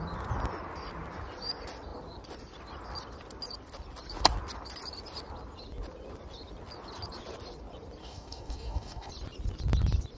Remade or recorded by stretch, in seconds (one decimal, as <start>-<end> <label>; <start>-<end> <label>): 0.0-8.0 recorded; 8.0-9.1 remade; 9.1-10.2 recorded